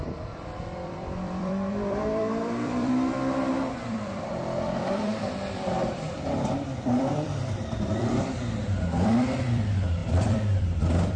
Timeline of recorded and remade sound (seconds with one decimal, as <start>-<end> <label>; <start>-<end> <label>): 0.0-11.2 remade